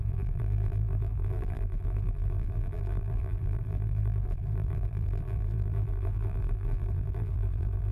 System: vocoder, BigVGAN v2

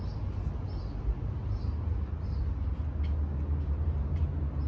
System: none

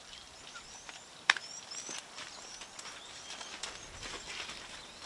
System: vocoder, BigVGAN v2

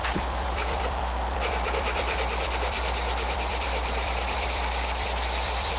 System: vocoder, BigVGAN v2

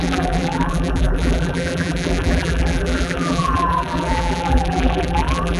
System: vocoder, BigVGAN v2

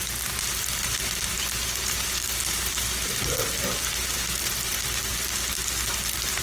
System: none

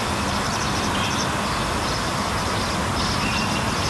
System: vocoder, BigVGAN v2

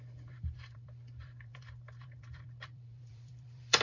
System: vocoder, BigVGAN v2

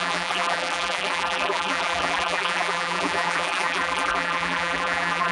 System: vocoder, BigVGAN v2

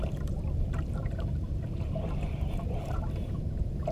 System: vocoder, BigVGAN v2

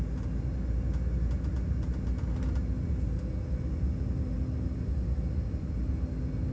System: none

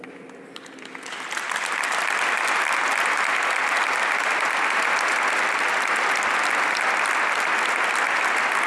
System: none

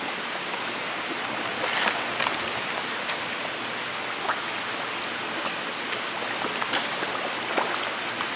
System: none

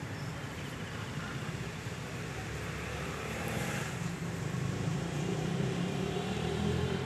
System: vocoder, BigVGAN v2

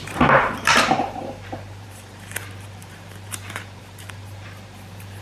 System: vocoder, BigVGAN v2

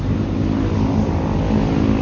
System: vocoder, BigVGAN v2